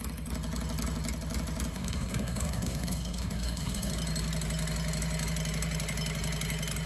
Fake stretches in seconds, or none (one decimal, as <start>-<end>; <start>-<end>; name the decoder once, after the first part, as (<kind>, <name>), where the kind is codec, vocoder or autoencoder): 1.7-3.9 (codec, SNAC)